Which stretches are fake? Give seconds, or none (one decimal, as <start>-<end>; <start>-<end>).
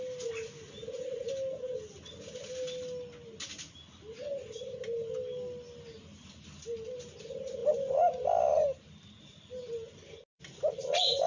none